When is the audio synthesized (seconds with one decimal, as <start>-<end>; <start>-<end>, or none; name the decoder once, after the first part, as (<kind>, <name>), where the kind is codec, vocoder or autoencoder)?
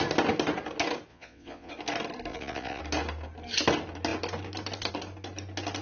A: 1.1-1.7 (vocoder, Vocos); 2.3-2.8